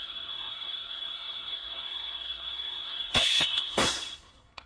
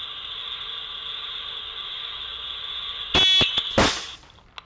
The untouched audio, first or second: second